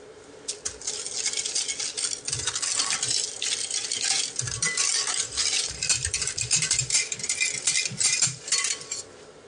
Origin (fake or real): real